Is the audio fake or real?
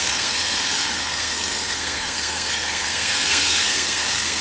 fake